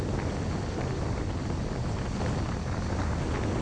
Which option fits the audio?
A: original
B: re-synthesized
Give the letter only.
A